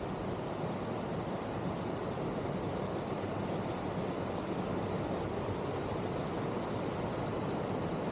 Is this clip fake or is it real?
real